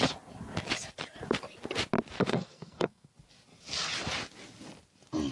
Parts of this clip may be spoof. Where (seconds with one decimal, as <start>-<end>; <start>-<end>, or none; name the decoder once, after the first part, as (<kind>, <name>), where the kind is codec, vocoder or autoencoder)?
2.2-3.1 (codec, SNAC)